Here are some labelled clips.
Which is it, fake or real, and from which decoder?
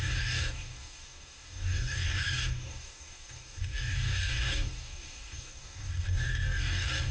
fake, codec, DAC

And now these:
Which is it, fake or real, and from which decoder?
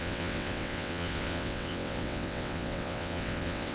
fake, vocoder, WaveNeXt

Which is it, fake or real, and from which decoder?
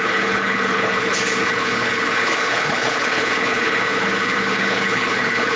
fake, codec, HILCodec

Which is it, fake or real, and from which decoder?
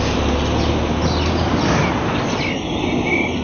real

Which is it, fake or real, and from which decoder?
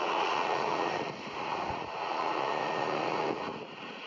fake, vocoder, Vocos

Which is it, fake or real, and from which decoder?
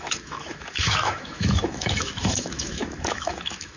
fake, autoencoder, DAC-VAE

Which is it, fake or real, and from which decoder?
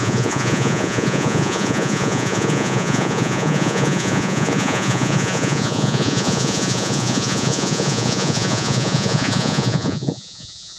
fake, vocoder, Vocos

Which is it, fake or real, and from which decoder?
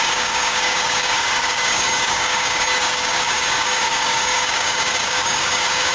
fake, codec, DAC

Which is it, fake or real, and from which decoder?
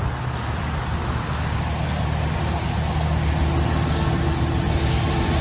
real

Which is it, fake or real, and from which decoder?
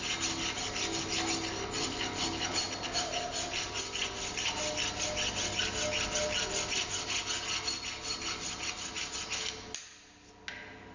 real